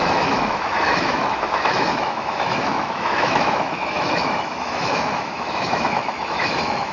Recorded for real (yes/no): no